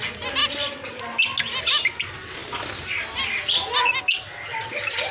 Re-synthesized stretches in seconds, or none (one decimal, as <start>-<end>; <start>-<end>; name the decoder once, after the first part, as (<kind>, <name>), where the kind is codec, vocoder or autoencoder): none